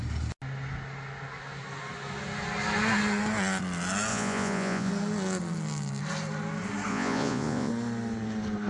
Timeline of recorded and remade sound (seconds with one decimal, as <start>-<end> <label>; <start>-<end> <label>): 0.0-4.1 recorded; 4.1-4.9 remade; 4.9-6.9 recorded; 6.9-7.7 remade; 7.7-8.7 recorded